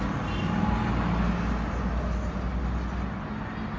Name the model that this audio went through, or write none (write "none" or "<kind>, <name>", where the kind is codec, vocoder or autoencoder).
none